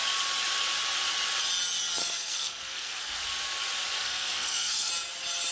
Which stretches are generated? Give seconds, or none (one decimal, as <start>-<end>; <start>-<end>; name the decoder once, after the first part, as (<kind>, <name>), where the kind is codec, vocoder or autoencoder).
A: 2.0-3.2 (codec, SNAC); 4.0-4.9